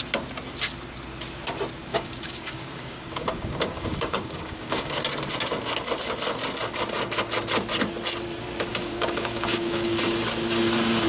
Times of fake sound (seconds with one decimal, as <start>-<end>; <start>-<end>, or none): 1.9-5.0; 8.7-10.0